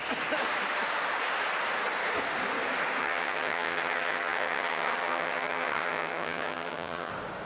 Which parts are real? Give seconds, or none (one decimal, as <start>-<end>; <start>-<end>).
0.0-3.0; 7.1-7.5